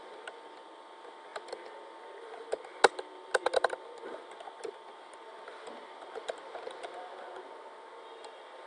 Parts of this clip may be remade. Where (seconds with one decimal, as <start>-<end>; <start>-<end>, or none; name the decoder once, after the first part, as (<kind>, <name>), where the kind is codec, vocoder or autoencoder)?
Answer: none